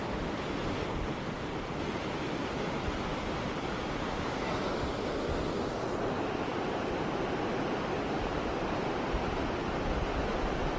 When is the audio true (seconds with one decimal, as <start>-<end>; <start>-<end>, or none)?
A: 0.0-3.1; 3.8-10.8